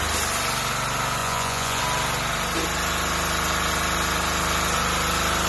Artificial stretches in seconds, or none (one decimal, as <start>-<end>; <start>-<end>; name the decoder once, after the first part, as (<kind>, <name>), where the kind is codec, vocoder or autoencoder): 1.2-1.8 (vocoder, Vocos)